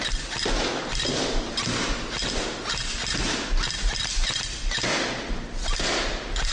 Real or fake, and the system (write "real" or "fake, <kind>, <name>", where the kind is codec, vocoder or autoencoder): real